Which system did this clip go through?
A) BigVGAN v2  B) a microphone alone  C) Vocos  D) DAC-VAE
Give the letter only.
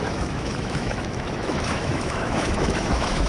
D